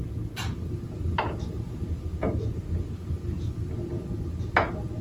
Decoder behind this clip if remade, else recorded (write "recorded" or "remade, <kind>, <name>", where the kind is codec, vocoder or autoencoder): recorded